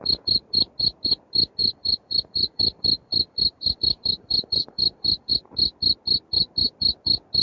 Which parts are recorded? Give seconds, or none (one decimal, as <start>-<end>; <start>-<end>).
0.0-1.6; 5.3-7.4